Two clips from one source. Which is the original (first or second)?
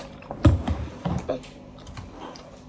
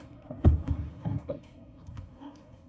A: first